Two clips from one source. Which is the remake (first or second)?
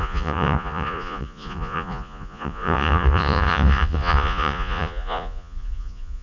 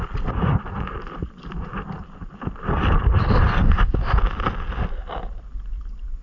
first